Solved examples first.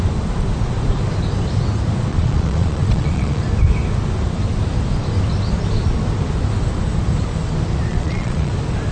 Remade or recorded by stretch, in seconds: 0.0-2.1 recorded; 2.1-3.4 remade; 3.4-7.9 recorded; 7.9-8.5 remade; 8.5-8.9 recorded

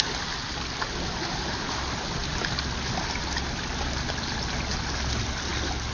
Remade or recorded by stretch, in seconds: 0.0-5.9 recorded

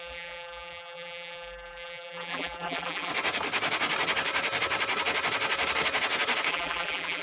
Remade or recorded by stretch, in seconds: 0.0-3.1 remade; 3.1-6.5 recorded; 6.5-7.2 remade

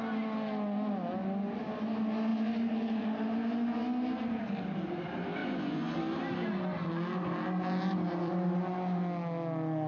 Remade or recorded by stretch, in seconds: 0.0-5.4 recorded; 5.4-6.0 remade; 6.0-9.9 recorded

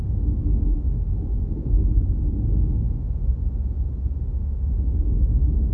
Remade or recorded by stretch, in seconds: 0.0-1.9 remade; 1.9-2.7 recorded; 2.7-3.4 remade; 3.4-4.3 recorded; 4.3-5.7 remade